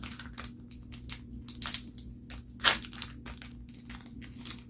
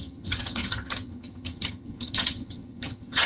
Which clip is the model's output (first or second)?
second